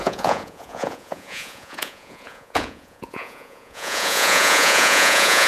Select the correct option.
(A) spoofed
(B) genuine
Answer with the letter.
A